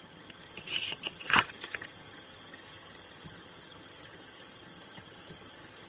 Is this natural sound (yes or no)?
no